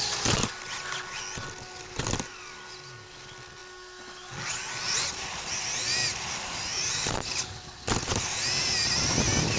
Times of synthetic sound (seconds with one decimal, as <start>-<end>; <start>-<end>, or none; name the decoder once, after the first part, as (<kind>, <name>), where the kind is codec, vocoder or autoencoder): none